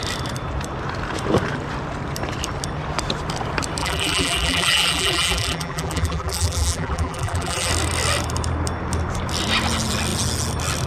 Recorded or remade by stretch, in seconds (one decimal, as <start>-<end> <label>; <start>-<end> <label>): 0.0-3.8 recorded; 3.8-7.7 remade; 7.7-10.9 recorded